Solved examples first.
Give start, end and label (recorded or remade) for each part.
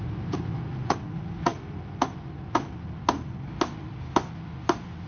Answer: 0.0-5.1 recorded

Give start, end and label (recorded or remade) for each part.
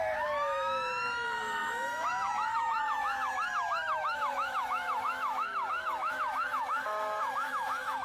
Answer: 0.0-8.0 remade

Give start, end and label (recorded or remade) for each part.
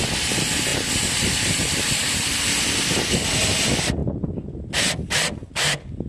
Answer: 0.0-0.7 recorded; 0.7-2.2 remade; 2.2-6.1 recorded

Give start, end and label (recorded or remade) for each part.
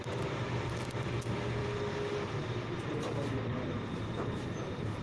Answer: 0.0-5.0 recorded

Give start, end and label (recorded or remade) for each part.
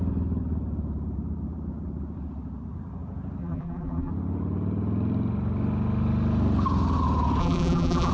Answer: 0.0-3.4 recorded; 3.4-4.1 remade; 4.1-7.4 recorded; 7.4-8.1 remade